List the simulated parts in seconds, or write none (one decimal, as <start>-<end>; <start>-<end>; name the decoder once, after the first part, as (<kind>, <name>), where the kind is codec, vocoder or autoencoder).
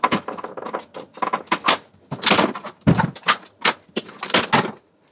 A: none